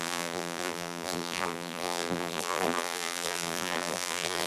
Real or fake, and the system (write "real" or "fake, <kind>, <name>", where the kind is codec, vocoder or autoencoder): fake, vocoder, BigVGAN v2